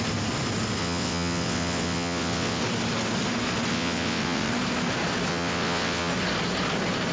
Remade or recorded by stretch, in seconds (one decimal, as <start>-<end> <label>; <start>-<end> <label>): 0.0-0.8 recorded; 0.8-2.6 remade; 2.6-3.7 recorded; 3.7-4.5 remade; 4.5-5.3 recorded; 5.3-6.1 remade; 6.1-7.1 recorded